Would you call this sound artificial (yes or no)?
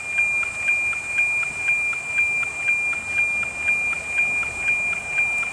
no